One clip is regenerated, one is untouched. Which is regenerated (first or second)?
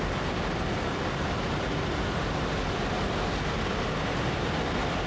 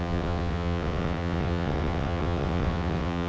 second